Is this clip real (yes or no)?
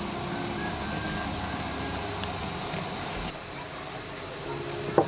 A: yes